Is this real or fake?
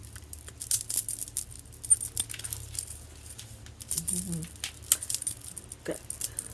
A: real